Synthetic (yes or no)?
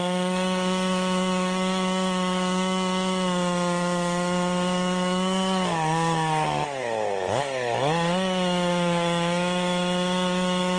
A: yes